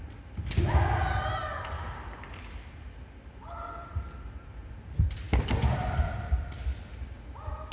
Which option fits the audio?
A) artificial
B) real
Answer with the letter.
B